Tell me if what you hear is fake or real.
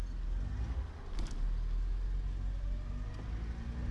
real